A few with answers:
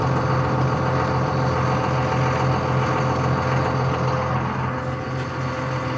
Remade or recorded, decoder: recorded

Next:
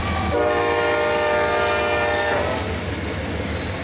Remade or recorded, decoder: recorded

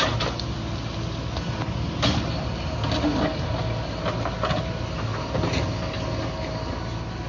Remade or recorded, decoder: recorded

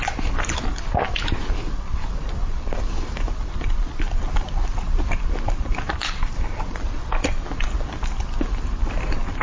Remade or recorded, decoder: recorded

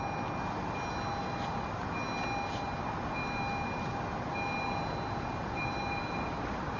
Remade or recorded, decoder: recorded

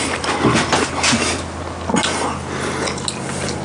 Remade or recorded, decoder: recorded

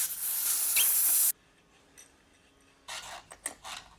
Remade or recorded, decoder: recorded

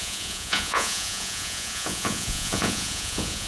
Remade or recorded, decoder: remade, vocoder, Vocos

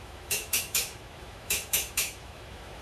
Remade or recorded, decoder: remade, autoencoder, DAC-VAE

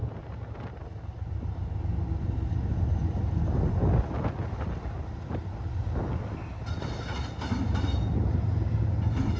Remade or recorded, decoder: recorded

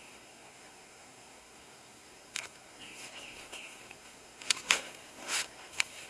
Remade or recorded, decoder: remade, codec, SNAC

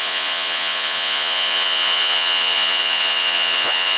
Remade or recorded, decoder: remade, vocoder, Vocos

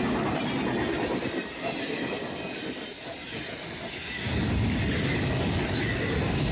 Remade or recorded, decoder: recorded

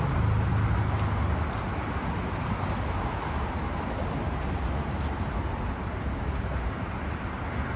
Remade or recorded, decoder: recorded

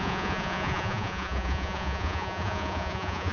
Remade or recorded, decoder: remade, vocoder, Vocos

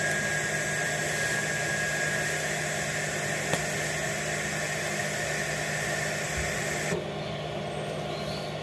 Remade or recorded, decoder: recorded